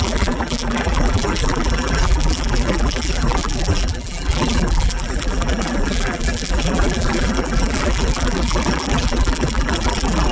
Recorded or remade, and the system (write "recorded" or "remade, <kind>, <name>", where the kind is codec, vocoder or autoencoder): remade, vocoder, BigVGAN v2